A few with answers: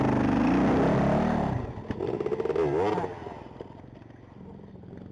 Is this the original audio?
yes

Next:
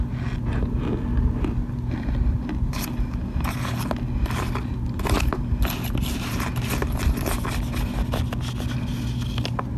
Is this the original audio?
yes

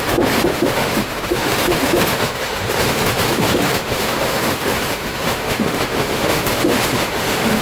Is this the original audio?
no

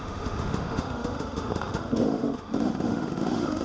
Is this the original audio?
no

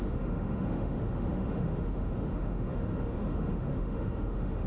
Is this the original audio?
no